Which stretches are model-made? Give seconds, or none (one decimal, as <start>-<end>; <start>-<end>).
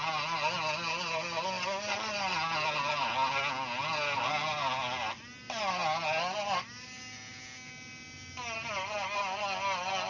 none